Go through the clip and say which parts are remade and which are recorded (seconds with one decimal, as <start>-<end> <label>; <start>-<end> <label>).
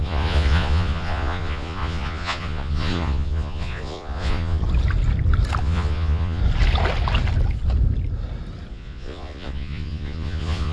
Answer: 0.0-4.6 remade; 4.6-5.6 recorded; 5.6-6.4 remade; 6.4-8.7 recorded; 8.7-10.7 remade